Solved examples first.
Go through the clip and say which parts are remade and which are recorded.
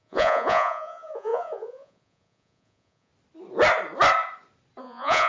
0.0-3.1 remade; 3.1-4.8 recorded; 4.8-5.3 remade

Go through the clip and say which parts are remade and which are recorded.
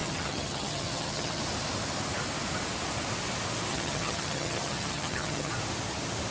0.0-1.4 remade; 1.4-3.7 recorded; 3.7-5.5 remade; 5.5-6.3 recorded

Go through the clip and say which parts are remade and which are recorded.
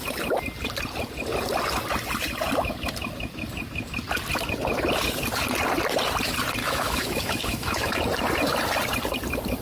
0.0-6.6 recorded; 6.6-8.0 remade; 8.0-9.6 recorded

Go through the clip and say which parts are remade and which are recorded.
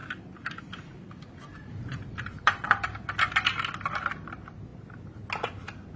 0.0-1.5 recorded; 1.5-2.9 remade; 2.9-6.0 recorded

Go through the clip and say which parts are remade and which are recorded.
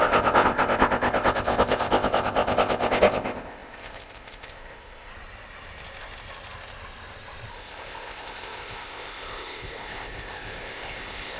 0.0-5.1 remade; 5.1-7.5 recorded; 7.5-11.4 remade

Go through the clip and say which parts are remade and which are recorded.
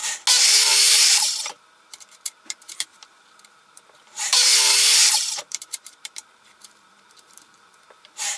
0.0-0.7 recorded; 0.7-8.4 remade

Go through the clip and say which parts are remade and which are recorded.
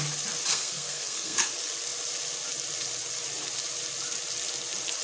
0.0-0.5 recorded; 0.5-1.5 remade; 1.5-5.0 recorded